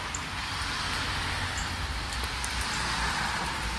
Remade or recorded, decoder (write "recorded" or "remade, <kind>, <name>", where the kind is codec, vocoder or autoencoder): recorded